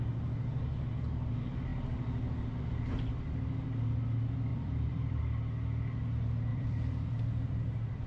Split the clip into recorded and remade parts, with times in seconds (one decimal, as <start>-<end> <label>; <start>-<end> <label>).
0.0-4.5 recorded; 4.5-5.2 remade; 5.2-6.5 recorded; 6.5-8.1 remade